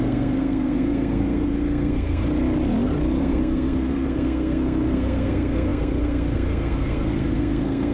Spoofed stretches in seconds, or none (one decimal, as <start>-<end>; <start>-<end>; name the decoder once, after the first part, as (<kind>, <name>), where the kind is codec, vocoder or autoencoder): 0.0-2.2 (codec, SNAC); 3.2-7.9